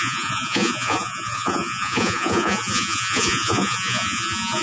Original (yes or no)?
no